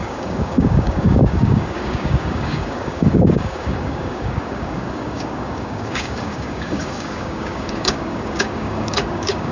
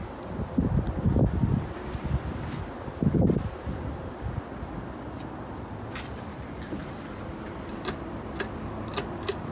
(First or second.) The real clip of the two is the second